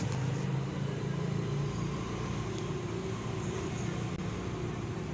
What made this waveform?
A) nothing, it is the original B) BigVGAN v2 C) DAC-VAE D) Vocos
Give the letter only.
A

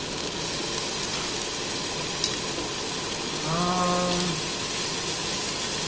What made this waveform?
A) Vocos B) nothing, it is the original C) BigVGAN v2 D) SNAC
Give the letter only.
B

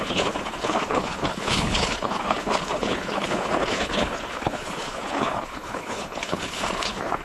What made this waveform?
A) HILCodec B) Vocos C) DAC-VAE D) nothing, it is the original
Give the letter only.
A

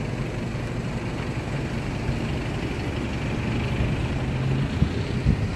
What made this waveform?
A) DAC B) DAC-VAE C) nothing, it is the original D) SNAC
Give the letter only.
C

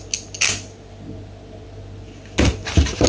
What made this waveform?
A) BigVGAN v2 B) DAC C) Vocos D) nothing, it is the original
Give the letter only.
D